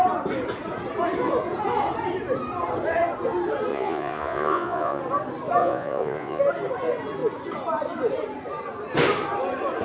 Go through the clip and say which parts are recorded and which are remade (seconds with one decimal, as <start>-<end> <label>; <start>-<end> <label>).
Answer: 0.0-3.7 recorded; 3.7-5.0 remade; 5.0-5.6 recorded; 5.6-6.4 remade; 6.4-9.8 recorded